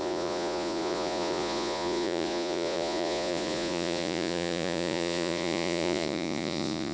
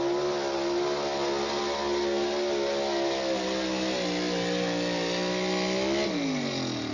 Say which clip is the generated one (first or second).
first